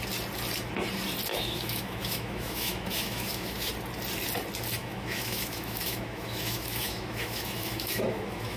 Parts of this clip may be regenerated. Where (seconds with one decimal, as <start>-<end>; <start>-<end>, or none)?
1.3-3.7; 4.8-8.6